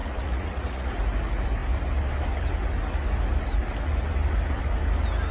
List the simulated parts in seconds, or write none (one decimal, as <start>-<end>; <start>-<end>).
0.0-0.9